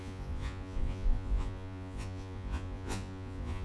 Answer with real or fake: fake